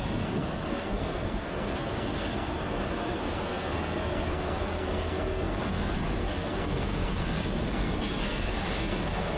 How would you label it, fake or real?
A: fake